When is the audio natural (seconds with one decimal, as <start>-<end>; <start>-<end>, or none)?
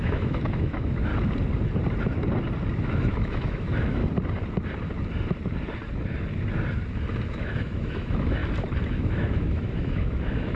1.1-2.8; 4.0-7.3; 8.4-8.9